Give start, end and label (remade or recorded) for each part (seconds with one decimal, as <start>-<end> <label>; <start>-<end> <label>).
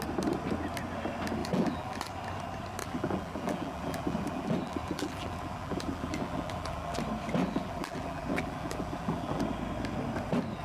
0.0-1.4 recorded; 1.4-2.1 remade; 2.1-2.8 recorded; 2.8-7.0 remade; 7.0-7.4 recorded; 7.4-9.4 remade; 9.4-10.6 recorded